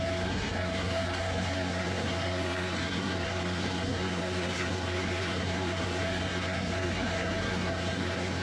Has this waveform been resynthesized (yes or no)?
yes